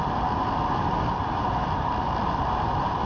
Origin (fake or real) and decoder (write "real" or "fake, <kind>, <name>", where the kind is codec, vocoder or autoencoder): real